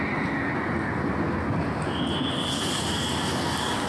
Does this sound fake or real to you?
real